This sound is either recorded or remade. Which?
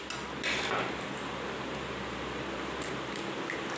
recorded